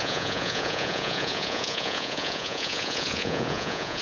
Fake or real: fake